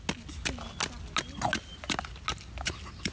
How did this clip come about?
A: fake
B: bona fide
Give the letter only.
B